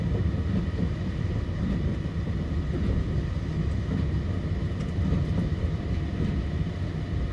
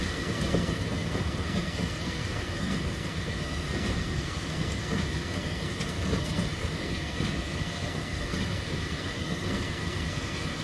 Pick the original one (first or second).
first